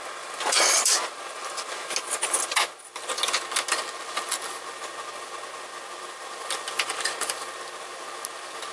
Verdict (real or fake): real